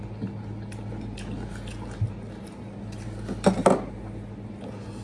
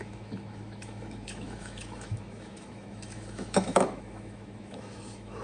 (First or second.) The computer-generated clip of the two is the second